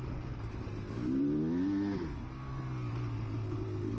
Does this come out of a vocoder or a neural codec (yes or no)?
no